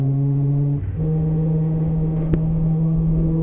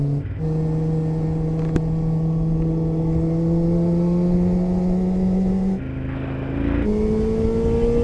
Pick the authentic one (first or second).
second